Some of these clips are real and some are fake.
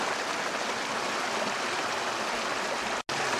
real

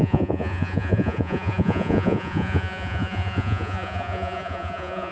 fake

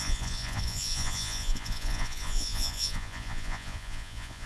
fake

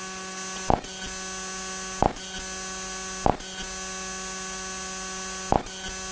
real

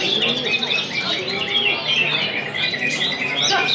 real